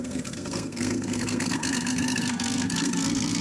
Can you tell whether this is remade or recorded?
remade